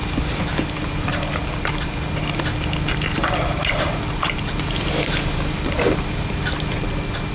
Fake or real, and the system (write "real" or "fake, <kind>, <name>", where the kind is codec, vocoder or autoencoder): real